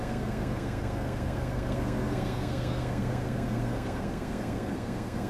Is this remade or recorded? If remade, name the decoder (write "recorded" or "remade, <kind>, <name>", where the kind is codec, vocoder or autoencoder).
remade, codec, SNAC